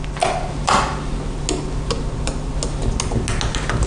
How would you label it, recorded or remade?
recorded